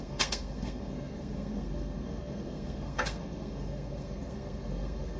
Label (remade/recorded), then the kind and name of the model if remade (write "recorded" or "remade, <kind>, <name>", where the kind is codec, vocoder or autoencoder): remade, codec, SNAC